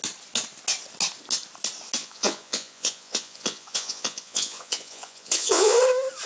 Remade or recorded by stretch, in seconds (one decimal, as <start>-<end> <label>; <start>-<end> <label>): 0.0-2.0 recorded; 2.0-5.8 remade; 5.8-6.3 recorded